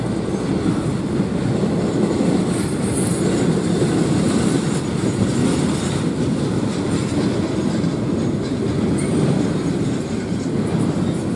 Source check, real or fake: real